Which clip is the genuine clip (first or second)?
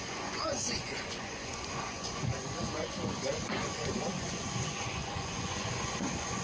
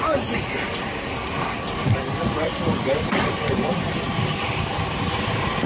second